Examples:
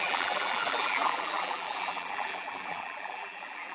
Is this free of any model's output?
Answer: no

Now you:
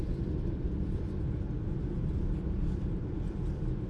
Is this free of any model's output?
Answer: yes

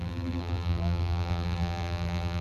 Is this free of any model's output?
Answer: no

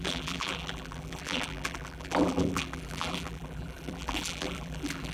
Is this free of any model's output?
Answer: no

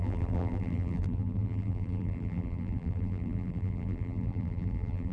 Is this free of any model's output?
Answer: no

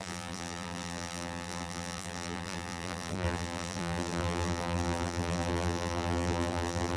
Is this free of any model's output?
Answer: no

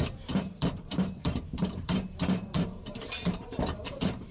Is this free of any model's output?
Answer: no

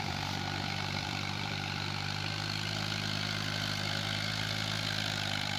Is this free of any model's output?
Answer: no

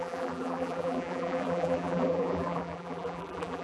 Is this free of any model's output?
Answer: no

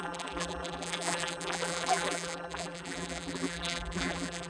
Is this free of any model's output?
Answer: no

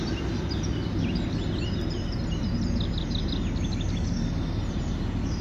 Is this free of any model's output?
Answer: yes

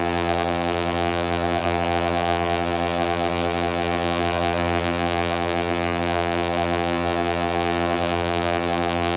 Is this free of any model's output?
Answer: no